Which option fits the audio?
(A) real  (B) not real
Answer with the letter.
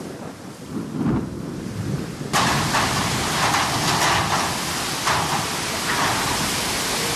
A